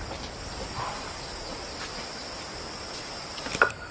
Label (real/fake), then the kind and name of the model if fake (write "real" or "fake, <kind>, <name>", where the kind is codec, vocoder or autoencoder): real